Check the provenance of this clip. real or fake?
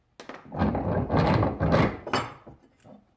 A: real